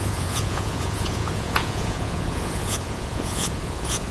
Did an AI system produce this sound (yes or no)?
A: yes